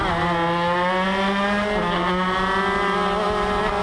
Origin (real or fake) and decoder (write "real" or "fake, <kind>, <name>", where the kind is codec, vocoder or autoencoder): real